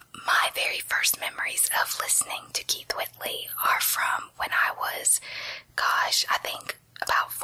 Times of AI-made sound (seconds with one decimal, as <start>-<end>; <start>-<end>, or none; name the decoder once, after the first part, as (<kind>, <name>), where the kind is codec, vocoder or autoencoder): 0.0-3.0 (vocoder, BigVGAN v2); 3.5-4.9